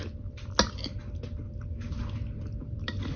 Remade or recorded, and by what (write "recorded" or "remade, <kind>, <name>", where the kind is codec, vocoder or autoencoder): recorded